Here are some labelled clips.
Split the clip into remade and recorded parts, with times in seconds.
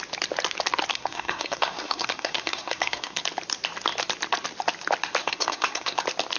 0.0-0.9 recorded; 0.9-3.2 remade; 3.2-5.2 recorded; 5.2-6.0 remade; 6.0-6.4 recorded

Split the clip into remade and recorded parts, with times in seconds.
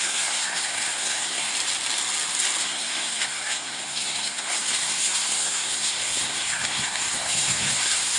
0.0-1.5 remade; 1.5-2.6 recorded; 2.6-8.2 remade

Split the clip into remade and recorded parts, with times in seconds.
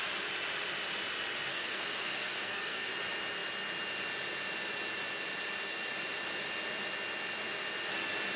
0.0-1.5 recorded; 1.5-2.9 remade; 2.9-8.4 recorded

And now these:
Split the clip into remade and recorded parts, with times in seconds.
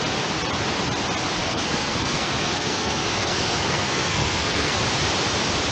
0.0-1.4 recorded; 1.4-4.8 remade; 4.8-5.7 recorded